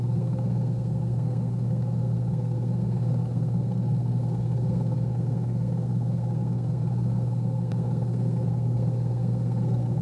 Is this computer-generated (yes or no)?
yes